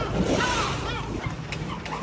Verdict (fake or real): real